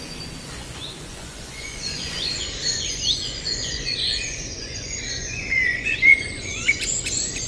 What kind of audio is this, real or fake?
fake